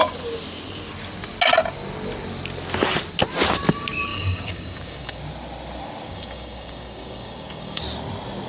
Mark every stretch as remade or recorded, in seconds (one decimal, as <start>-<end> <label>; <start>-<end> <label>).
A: 0.0-4.1 recorded; 4.1-5.2 remade; 5.2-6.1 recorded; 6.1-7.8 remade; 7.8-8.5 recorded